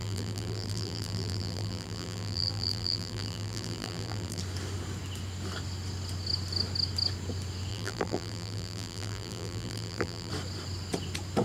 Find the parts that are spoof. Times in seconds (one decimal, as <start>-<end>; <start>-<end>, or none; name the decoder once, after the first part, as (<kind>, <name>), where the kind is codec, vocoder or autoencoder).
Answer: 0.0-4.4 (vocoder, BigVGAN v2); 7.7-10.3